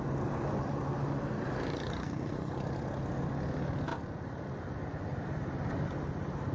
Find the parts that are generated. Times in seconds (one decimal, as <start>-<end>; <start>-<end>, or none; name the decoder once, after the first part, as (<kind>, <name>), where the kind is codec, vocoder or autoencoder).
2.0-2.5 (codec, SNAC)